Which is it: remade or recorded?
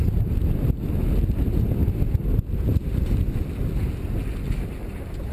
recorded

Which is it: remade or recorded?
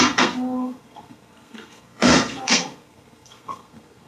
remade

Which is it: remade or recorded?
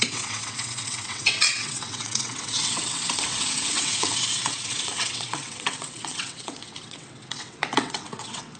remade